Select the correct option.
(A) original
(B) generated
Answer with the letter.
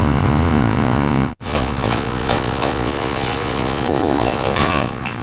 B